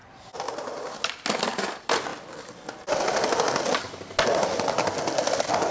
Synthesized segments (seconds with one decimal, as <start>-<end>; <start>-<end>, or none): none